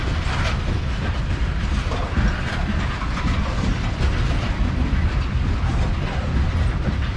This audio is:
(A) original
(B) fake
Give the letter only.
B